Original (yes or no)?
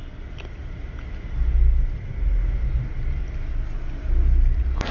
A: yes